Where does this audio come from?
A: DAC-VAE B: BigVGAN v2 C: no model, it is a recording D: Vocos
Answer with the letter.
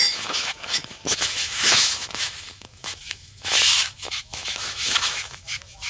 A